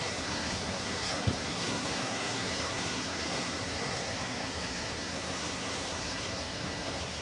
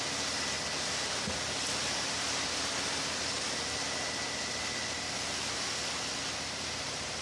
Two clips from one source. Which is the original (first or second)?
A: second